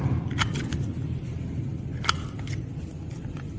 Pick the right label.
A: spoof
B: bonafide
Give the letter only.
B